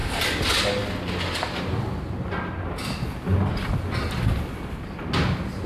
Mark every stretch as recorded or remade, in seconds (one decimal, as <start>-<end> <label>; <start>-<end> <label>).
0.0-5.7 recorded